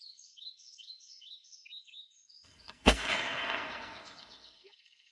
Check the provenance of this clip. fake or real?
fake